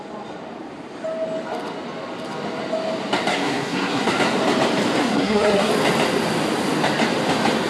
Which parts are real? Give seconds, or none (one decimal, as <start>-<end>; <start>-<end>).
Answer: 0.0-3.3; 4.1-5.0; 5.7-7.7